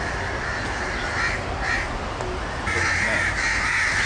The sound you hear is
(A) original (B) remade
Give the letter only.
A